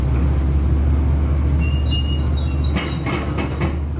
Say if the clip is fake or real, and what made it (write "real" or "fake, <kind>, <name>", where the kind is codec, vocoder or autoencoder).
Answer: real